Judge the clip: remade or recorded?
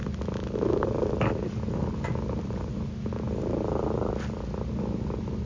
recorded